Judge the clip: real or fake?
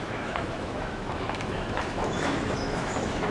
fake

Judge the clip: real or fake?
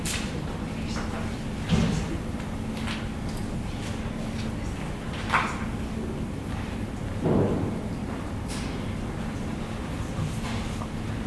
real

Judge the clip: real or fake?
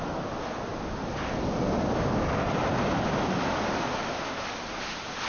real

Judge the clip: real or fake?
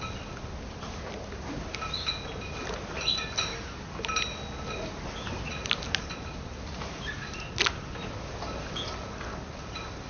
real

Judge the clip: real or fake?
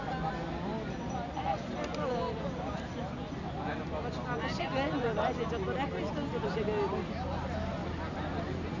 real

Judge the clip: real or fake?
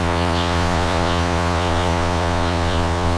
fake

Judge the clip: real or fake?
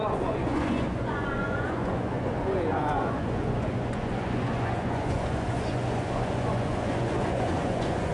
fake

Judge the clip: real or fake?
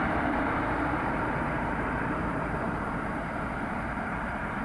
fake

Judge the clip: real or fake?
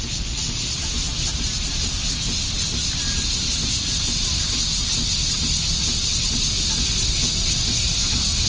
real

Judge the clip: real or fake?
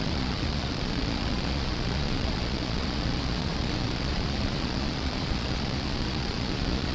fake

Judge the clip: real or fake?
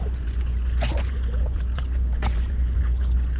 fake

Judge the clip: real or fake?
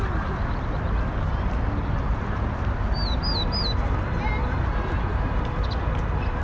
real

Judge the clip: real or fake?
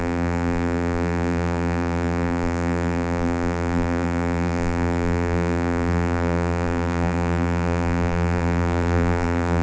fake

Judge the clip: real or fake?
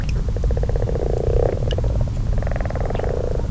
real